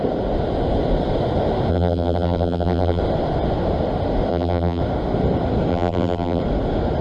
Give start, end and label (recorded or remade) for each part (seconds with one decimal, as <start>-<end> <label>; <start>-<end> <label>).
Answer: 0.0-1.7 recorded; 1.7-3.0 remade; 3.0-4.3 recorded; 4.3-4.8 remade; 4.8-5.7 recorded; 5.7-6.4 remade; 6.4-7.0 recorded